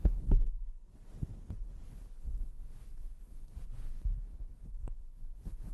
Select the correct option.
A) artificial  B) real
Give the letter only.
B